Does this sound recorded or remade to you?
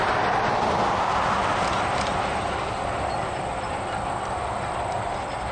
recorded